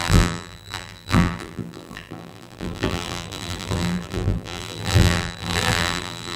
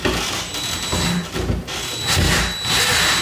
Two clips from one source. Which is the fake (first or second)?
first